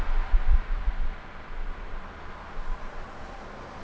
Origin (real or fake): real